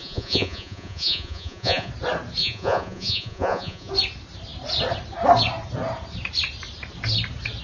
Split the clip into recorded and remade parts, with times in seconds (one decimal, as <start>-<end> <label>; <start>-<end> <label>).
0.0-1.9 remade; 1.9-2.4 recorded; 2.4-3.9 remade; 3.9-7.6 recorded